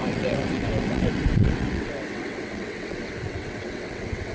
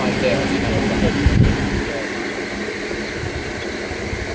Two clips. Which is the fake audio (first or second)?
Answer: first